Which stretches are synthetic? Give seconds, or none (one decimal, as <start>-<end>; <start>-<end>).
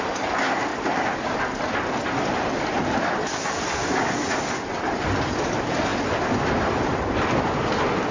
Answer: none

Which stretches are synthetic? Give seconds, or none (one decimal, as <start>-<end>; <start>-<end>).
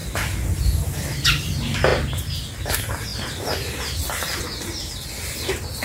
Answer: 0.0-1.5; 3.1-4.4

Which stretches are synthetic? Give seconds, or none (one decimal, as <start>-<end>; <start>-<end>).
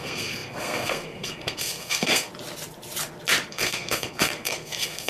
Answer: 0.0-2.3; 3.5-5.1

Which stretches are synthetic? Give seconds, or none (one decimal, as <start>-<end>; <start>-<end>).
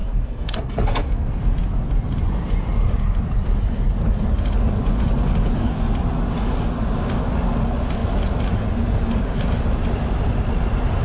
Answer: 0.0-1.5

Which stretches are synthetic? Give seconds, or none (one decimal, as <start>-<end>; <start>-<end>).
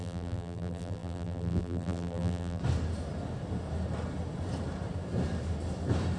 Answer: 0.0-2.6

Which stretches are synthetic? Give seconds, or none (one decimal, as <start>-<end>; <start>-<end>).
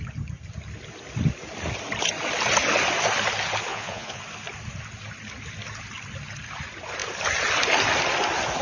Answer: 3.7-4.2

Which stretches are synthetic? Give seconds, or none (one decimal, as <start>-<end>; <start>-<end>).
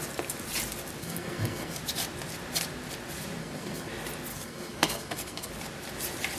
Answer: 1.0-1.8; 3.4-3.9; 4.3-5.5